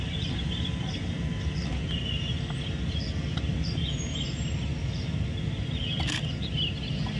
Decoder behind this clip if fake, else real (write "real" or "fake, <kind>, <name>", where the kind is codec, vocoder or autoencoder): real